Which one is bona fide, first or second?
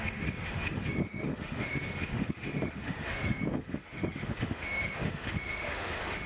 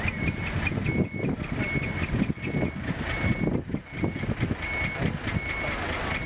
second